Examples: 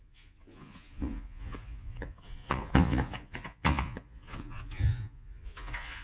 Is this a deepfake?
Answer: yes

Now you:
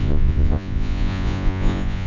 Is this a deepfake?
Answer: yes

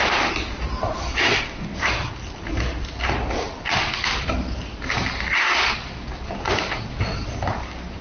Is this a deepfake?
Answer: no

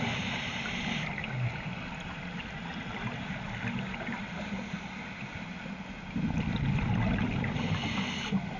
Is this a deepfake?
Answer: no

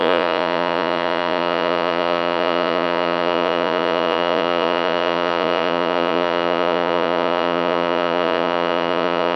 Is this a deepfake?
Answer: yes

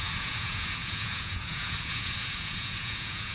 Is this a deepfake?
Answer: yes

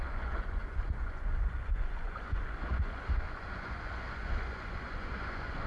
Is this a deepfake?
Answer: yes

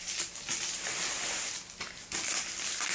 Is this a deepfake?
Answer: no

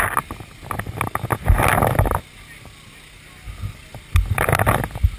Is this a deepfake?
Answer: no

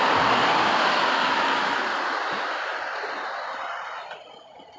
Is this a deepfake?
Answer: no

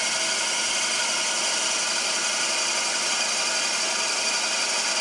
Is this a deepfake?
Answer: no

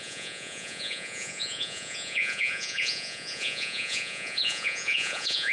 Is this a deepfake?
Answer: yes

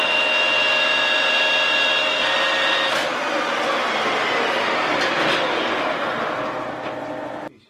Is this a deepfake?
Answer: no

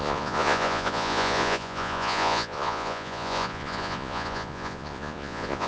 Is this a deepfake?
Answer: yes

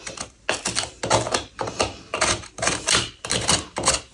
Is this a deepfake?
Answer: no